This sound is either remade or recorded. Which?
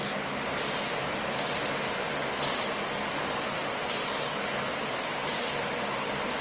recorded